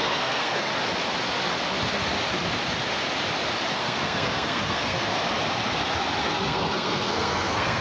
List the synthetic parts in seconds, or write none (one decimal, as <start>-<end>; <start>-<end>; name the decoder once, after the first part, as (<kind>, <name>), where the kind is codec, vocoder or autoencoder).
0.0-0.7 (codec, SNAC); 3.8-5.1; 6.2-7.8